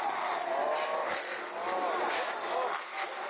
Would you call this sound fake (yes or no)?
no